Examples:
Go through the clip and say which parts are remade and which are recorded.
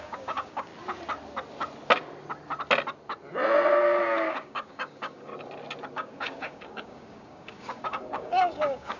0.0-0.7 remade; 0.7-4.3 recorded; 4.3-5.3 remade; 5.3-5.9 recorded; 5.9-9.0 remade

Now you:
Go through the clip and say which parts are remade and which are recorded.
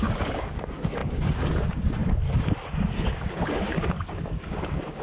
0.0-2.0 remade; 2.0-2.9 recorded; 2.9-5.0 remade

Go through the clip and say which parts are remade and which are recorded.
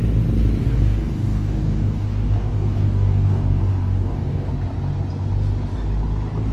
0.0-0.6 recorded; 0.6-4.5 remade; 4.5-6.5 recorded